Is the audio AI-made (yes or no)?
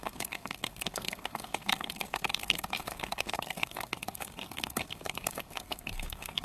yes